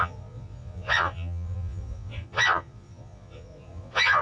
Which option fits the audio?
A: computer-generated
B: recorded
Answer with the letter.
A